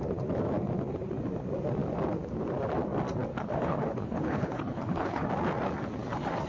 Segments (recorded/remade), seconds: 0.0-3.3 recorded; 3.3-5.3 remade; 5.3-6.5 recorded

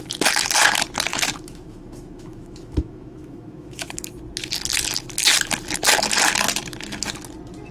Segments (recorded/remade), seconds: 0.0-1.1 recorded; 1.1-4.0 remade; 4.0-7.7 recorded

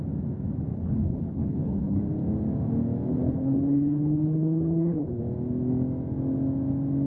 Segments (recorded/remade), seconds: 0.0-0.7 recorded; 0.7-2.0 remade; 2.0-3.1 recorded; 3.1-5.2 remade; 5.2-7.1 recorded

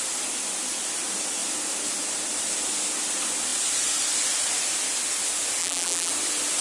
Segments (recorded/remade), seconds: 0.0-5.6 recorded; 5.6-6.1 remade; 6.1-6.6 recorded

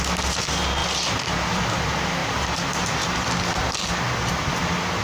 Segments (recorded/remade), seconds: 0.0-0.8 recorded; 0.8-1.6 remade; 1.6-2.2 recorded; 2.2-3.2 remade; 3.2-5.0 recorded

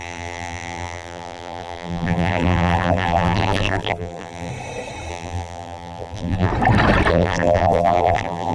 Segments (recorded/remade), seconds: 0.0-4.5 remade; 4.5-5.1 recorded; 5.1-6.5 remade; 6.5-7.1 recorded; 7.1-8.5 remade

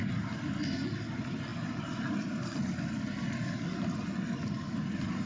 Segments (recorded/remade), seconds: 0.0-5.3 recorded